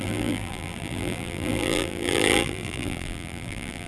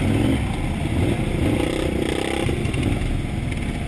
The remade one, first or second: first